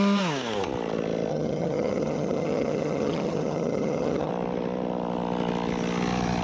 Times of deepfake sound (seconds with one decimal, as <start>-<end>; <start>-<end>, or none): 1.3-4.3